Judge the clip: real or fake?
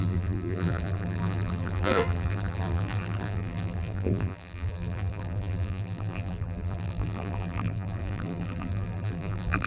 fake